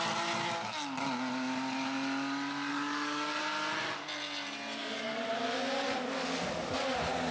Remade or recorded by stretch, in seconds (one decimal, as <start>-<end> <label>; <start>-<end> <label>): 0.0-2.7 recorded; 2.7-3.4 remade; 3.4-4.8 recorded; 4.8-5.3 remade; 5.3-7.3 recorded

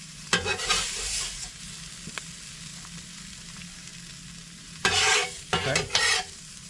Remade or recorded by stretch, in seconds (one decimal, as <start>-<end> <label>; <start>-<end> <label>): 0.0-1.5 remade; 1.5-3.5 recorded; 3.5-3.9 remade; 3.9-4.6 recorded; 4.6-6.7 remade

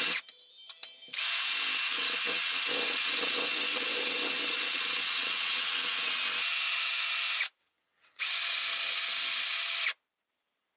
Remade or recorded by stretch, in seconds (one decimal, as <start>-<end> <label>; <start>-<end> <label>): 0.0-1.9 recorded; 1.9-6.2 remade; 6.2-7.6 recorded; 7.6-8.2 remade; 8.2-10.8 recorded

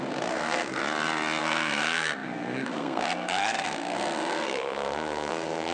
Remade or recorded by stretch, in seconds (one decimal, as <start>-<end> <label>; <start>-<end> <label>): 0.0-0.8 remade; 0.8-1.4 recorded; 1.4-5.7 remade